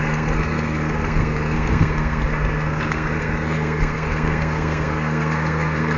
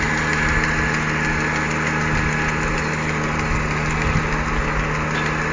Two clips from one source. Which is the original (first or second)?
second